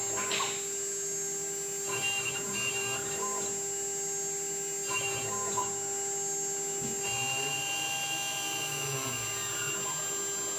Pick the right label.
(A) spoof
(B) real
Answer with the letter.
B